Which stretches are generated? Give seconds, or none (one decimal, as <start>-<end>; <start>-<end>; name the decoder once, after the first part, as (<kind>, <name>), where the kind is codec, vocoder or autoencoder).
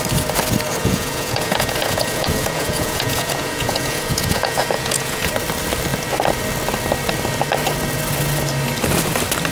0.8-5.3 (vocoder, Vocos)